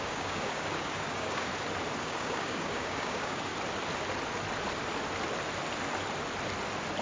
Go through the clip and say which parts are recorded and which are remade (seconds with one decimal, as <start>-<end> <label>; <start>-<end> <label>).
0.0-1.5 remade; 1.5-2.0 recorded; 2.0-3.5 remade; 3.5-7.0 recorded